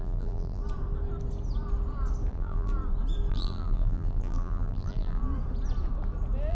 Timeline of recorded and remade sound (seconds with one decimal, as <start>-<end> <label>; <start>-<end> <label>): 0.0-0.6 remade; 0.6-2.3 recorded; 2.3-2.7 remade; 2.7-3.3 recorded; 3.3-5.2 remade; 5.2-6.5 recorded